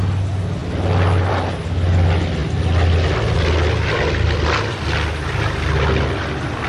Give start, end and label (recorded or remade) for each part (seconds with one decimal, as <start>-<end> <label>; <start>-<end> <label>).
0.0-6.7 recorded